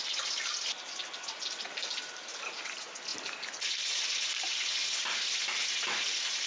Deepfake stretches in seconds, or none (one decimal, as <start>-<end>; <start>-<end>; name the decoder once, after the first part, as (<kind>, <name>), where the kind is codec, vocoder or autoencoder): none